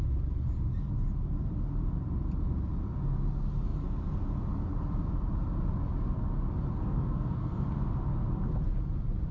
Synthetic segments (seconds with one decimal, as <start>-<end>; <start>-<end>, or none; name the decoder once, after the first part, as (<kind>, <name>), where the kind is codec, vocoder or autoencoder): 6.8-7.7 (codec, SNAC)